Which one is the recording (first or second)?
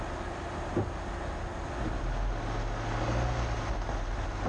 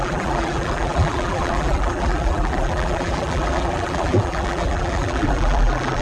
first